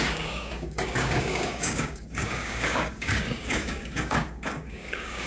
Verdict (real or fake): fake